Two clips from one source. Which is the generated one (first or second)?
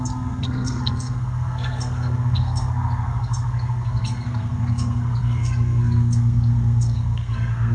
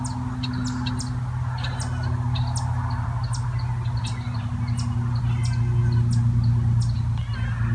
first